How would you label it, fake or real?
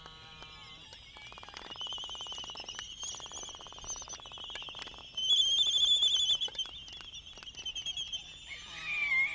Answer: real